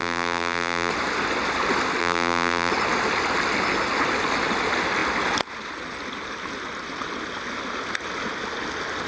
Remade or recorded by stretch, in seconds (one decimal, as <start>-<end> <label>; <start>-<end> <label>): 0.0-0.9 remade; 0.9-2.0 recorded; 2.0-2.7 remade; 2.7-9.1 recorded